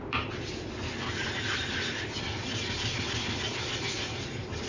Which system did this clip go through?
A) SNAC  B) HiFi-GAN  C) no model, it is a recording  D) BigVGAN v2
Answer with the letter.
C